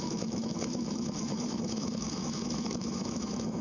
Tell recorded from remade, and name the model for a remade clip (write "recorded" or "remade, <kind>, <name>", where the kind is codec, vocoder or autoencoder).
remade, autoencoder, DAC-VAE